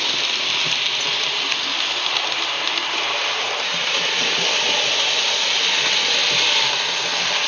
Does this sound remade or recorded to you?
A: recorded